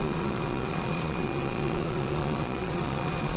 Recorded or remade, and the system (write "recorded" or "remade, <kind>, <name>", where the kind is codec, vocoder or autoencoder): remade, vocoder, Vocos